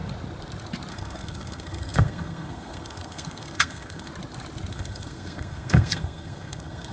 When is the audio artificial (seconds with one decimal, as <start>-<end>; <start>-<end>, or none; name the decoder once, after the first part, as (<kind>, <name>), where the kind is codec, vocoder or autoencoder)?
0.9-4.1 (codec, SNAC); 4.7-6.9